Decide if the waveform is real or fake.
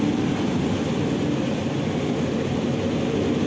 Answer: real